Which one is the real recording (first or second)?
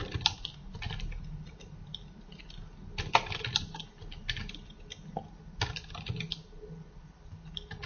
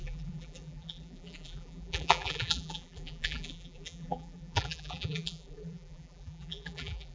first